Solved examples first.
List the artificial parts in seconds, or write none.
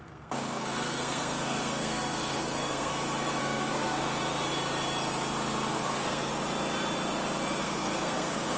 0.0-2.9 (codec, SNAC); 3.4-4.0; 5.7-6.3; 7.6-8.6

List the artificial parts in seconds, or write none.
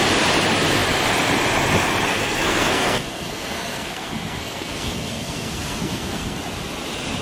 2.1-6.4 (codec, SNAC)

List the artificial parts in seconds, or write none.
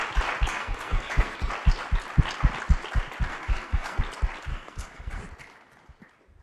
0.5-1.5 (codec, SNAC); 3.3-4.0; 4.5-5.2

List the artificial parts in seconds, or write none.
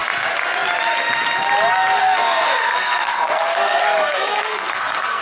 2.0-5.2 (codec, SNAC)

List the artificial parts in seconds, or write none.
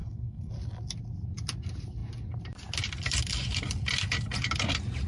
0.0-0.5 (codec, SNAC)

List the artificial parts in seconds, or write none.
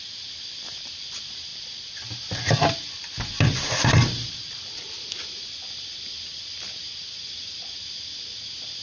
none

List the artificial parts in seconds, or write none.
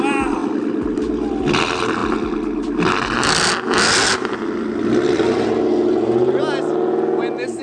none